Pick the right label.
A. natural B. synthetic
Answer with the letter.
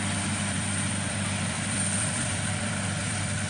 B